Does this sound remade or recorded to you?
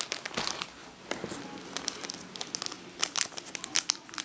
recorded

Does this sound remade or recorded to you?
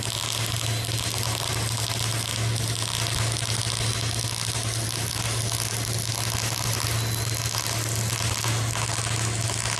recorded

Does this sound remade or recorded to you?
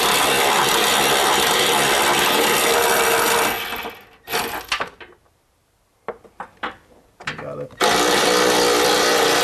recorded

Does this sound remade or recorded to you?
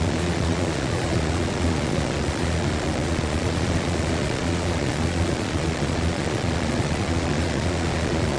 remade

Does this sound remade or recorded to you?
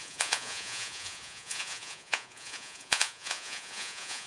remade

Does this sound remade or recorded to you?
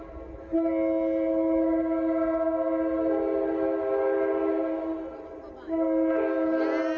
recorded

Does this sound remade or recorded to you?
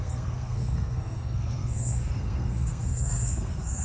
remade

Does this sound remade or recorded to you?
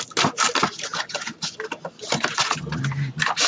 recorded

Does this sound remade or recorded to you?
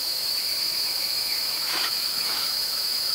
remade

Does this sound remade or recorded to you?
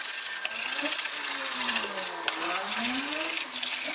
recorded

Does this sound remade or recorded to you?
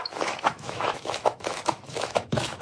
remade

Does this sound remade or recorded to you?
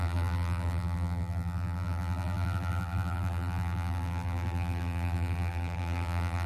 remade